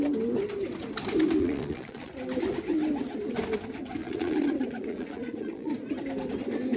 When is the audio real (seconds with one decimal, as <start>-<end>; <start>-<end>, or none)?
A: 0.0-1.4; 2.1-4.0; 5.7-6.8

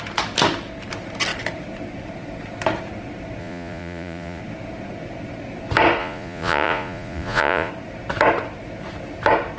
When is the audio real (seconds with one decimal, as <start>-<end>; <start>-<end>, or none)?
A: 0.0-3.4; 4.4-6.0; 7.7-9.6

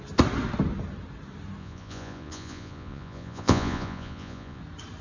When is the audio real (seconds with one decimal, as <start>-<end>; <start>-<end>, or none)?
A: 0.0-1.6; 4.6-5.0

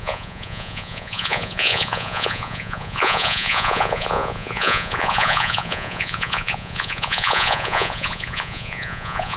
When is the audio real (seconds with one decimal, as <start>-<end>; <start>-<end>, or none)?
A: none

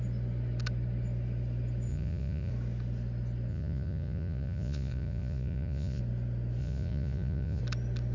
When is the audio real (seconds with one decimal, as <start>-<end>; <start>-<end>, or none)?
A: 0.0-1.9; 2.5-3.5; 6.0-6.6; 7.6-8.1